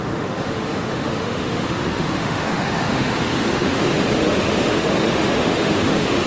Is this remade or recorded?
remade